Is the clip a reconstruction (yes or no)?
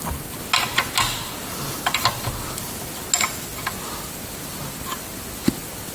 no